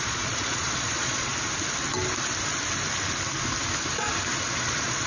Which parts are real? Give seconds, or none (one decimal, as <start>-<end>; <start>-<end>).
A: 1.3-4.4